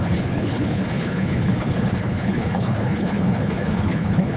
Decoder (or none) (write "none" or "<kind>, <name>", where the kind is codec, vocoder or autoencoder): codec, HILCodec